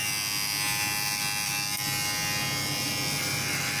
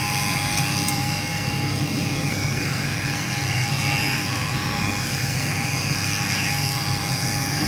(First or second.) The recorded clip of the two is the first